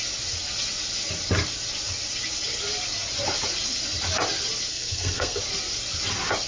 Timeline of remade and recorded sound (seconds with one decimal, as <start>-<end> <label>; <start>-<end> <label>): 0.0-4.7 recorded; 4.7-5.4 remade; 5.4-6.5 recorded